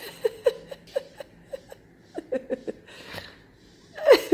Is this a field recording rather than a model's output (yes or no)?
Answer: yes